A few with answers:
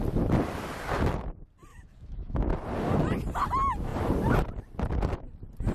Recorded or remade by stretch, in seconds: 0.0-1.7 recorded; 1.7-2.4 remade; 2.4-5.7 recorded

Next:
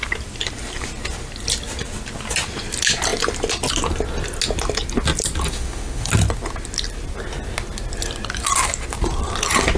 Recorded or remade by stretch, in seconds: 0.0-5.5 recorded; 5.5-6.1 remade; 6.1-9.8 recorded

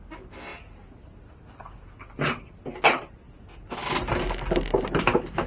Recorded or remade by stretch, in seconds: 0.0-5.5 recorded

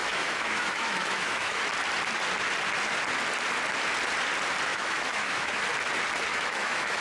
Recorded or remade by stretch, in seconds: 0.0-1.6 remade; 1.6-4.7 recorded; 4.7-5.6 remade; 5.6-6.3 recorded; 6.3-7.0 remade

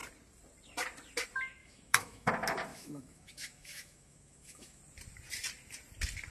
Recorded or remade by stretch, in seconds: 0.0-1.6 recorded; 1.6-2.3 remade; 2.3-2.7 recorded; 2.7-4.8 remade; 4.8-6.3 recorded

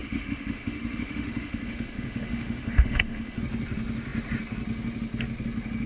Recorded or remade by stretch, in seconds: 0.0-3.4 remade; 3.4-5.9 recorded

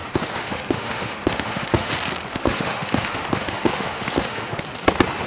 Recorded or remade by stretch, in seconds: 0.0-1.9 remade; 1.9-2.3 recorded; 2.3-4.6 remade; 4.6-5.3 recorded

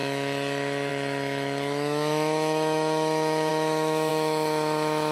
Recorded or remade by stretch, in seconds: 0.0-5.1 remade